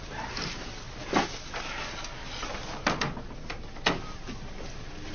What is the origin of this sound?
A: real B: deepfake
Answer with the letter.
A